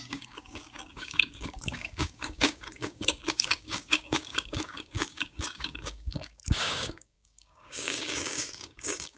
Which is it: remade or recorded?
remade